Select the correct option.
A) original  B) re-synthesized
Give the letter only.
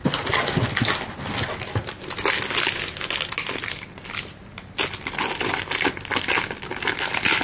A